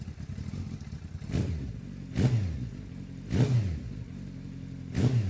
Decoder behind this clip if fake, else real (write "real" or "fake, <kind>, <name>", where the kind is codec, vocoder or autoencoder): real